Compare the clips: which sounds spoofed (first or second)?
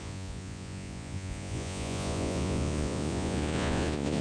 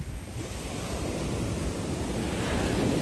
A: first